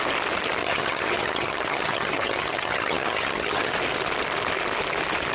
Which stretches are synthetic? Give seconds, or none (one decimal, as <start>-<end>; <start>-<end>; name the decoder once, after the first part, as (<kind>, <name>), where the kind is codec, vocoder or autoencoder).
0.6-3.7 (vocoder, HiFi-GAN)